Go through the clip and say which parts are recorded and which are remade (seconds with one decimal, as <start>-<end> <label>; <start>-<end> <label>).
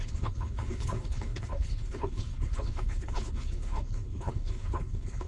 0.0-5.3 remade